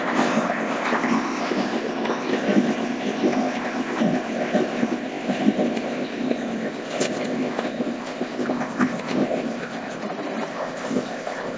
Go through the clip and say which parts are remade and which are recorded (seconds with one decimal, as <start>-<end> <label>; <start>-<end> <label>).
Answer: 0.0-10.0 remade; 10.0-10.5 recorded; 10.5-11.6 remade